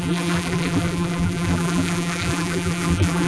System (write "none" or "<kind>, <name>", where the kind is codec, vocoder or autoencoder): vocoder, BigVGAN v2